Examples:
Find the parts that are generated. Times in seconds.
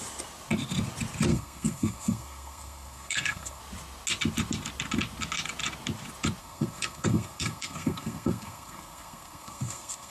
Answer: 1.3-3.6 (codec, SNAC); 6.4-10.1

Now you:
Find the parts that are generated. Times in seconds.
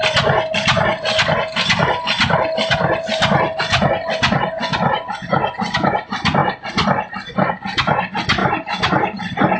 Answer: 8.4-9.2 (vocoder, BigVGAN v2)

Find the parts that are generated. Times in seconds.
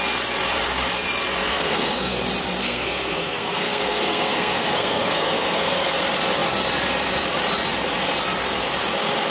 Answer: 1.5-2.2 (codec, SNAC); 2.6-6.0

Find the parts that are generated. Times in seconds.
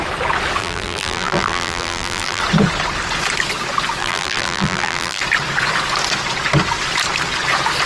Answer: 0.6-2.4 (vocoder, BigVGAN v2); 4.0-5.2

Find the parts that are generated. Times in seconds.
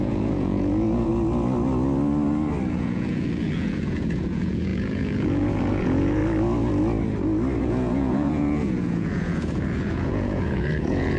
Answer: 0.0-1.1 (vocoder, Vocos); 2.7-6.2; 7.6-11.2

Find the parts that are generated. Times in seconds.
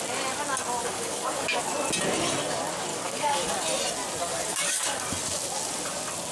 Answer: 0.8-1.6 (codec, DAC); 2.9-3.5; 4.3-5.0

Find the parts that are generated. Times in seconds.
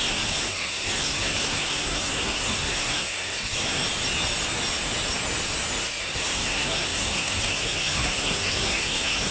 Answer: 0.0-3.8 (codec, SNAC); 6.0-9.3